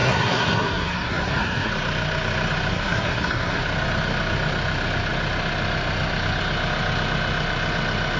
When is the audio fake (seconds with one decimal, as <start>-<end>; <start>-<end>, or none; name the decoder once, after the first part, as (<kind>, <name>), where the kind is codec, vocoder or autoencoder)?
0.0-1.7 (codec, SNAC); 2.7-3.6